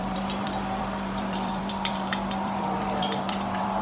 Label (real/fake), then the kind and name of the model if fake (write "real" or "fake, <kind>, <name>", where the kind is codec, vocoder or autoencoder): fake, vocoder, BigVGAN v2